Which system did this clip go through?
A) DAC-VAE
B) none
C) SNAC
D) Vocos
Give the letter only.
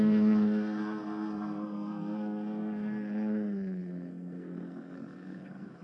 C